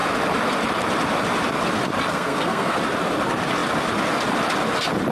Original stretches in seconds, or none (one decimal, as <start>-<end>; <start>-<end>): 0.0-2.1; 2.8-5.1

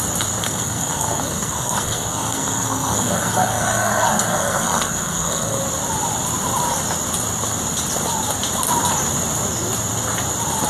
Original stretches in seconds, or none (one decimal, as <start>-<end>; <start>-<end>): 0.0-0.4; 5.6-10.7

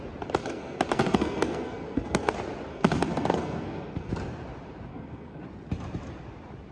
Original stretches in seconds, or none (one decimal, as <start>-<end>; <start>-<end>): 0.0-0.4; 2.3-2.7; 4.1-4.9; 5.4-6.7